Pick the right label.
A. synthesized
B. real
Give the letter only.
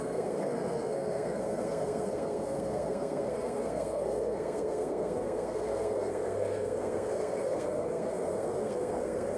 A